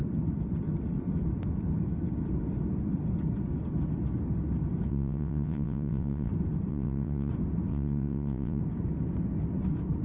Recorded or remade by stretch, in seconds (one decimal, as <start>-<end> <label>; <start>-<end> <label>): 0.0-4.9 recorded; 4.9-6.3 remade; 6.3-6.7 recorded; 6.7-7.3 remade; 7.3-7.7 recorded; 7.7-8.6 remade; 8.6-10.0 recorded